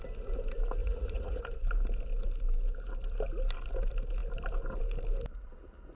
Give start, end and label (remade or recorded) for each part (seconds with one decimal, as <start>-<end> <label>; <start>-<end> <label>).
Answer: 0.0-0.8 recorded; 0.8-1.4 remade; 1.4-5.9 recorded